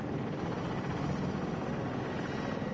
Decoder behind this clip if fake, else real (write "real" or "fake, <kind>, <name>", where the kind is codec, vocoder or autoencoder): real